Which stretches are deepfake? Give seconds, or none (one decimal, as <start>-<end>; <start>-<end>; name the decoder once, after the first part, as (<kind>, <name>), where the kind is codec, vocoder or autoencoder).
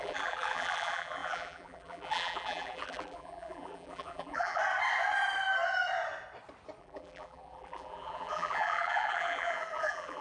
0.0-4.6 (vocoder, BigVGAN v2); 6.8-10.2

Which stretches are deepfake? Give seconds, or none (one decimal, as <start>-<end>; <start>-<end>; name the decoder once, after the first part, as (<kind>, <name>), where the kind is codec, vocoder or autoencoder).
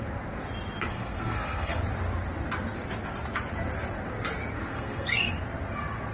0.9-1.8 (codec, SNAC); 4.7-5.3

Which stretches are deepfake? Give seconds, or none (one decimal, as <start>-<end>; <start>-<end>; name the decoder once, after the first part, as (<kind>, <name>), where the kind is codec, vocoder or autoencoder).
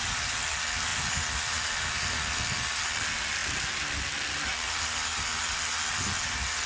none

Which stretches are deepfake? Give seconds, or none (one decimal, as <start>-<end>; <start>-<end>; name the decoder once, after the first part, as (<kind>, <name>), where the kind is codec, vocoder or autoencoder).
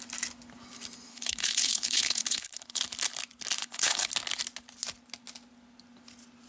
1.1-2.8 (codec, HILCodec); 3.6-4.1